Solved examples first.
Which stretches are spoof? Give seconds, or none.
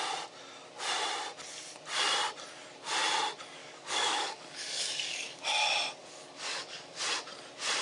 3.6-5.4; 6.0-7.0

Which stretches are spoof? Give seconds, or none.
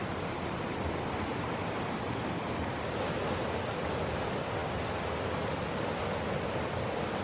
none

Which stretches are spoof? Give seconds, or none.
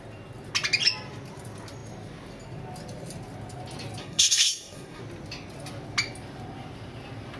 4.0-5.0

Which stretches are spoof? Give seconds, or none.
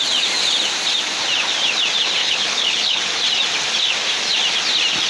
2.2-3.0